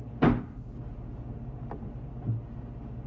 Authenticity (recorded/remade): recorded